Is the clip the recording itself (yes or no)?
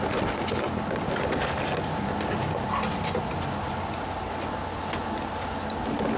yes